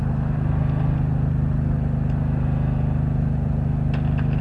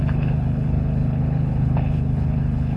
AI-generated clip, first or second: second